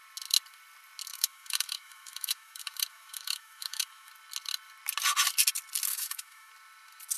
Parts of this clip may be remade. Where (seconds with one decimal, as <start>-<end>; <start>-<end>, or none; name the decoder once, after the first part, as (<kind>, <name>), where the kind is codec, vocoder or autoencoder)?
1.1-4.1 (autoencoder, DAC-VAE); 5.9-6.5